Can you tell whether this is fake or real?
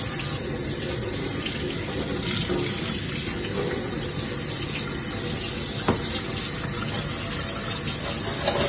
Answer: real